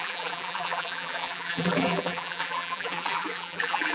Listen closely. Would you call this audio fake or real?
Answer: fake